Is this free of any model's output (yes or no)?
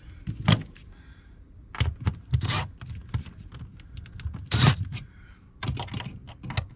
yes